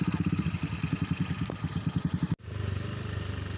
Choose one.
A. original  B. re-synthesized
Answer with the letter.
A